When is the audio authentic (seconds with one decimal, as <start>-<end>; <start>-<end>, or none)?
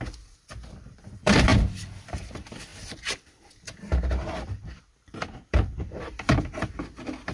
1.5-2.2